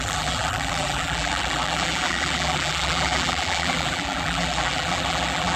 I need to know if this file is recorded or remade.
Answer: remade